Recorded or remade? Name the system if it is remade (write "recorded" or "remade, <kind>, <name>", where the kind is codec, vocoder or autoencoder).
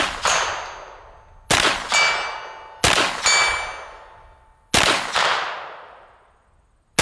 recorded